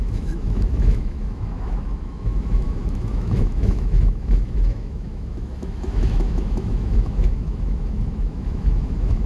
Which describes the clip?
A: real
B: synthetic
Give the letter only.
B